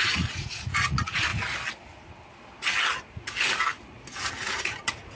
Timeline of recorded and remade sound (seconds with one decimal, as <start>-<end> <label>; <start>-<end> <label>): 0.0-1.3 remade; 1.3-4.4 recorded; 4.4-5.2 remade

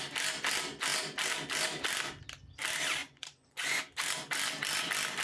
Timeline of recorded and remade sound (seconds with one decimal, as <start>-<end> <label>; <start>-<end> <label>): 0.0-3.0 recorded; 3.0-3.8 remade; 3.8-5.2 recorded

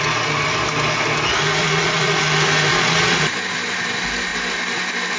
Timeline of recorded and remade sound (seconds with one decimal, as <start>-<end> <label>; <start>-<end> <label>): 0.0-1.6 recorded; 1.6-2.2 remade; 2.2-2.7 recorded; 2.7-3.2 remade; 3.2-5.2 recorded

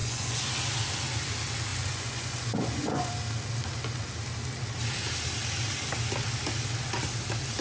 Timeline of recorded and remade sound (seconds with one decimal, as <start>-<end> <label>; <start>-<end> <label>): 0.0-0.5 remade; 0.5-1.7 recorded; 1.7-3.1 remade; 3.1-7.6 recorded

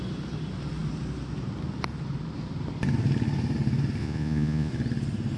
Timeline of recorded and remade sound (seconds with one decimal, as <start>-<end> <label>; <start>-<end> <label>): 0.0-4.0 recorded; 4.0-4.7 remade; 4.7-5.4 recorded

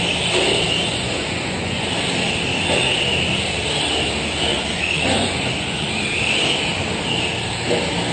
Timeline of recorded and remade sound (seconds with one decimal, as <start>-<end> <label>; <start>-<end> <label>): 0.0-0.9 recorded; 0.9-1.9 remade; 1.9-4.5 recorded; 4.5-5.9 remade; 5.9-8.1 recorded

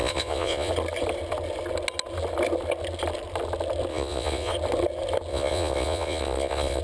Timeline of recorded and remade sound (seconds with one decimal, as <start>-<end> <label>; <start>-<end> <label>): 0.0-0.7 remade; 0.7-3.9 recorded; 3.9-4.5 remade; 4.5-5.3 recorded; 5.3-6.8 remade